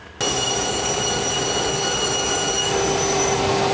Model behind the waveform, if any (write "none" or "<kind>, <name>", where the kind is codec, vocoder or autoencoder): none